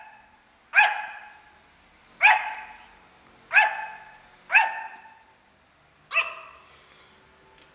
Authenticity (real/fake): real